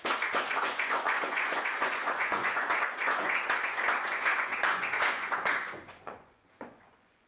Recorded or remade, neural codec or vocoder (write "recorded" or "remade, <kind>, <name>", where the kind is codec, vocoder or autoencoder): remade, vocoder, Vocos